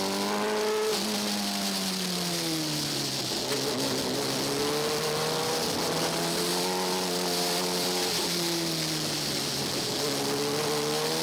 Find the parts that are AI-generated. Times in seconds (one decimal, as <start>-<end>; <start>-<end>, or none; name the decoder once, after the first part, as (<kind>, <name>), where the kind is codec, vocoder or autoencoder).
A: none